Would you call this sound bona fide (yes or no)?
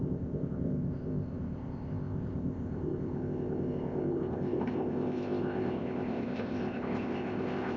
no